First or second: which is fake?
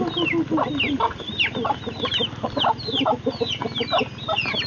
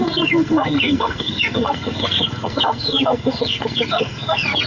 second